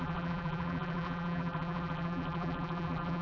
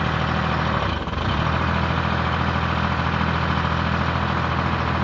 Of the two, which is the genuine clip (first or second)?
second